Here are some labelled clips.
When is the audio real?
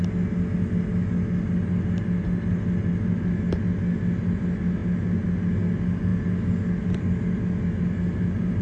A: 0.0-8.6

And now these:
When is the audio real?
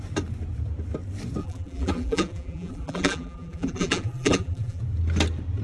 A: 0.0-1.4; 4.8-5.6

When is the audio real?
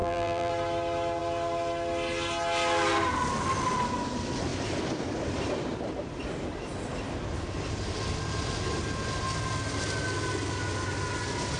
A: 0.5-11.6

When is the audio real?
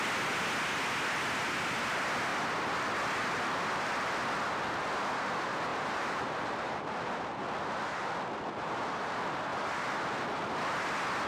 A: 0.0-5.7; 7.2-9.5; 10.0-11.3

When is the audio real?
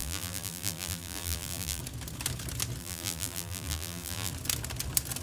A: 1.8-2.8; 4.3-5.2